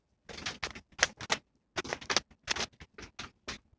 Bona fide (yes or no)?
yes